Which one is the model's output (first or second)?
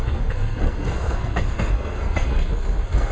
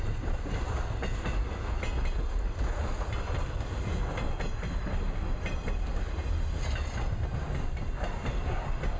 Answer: first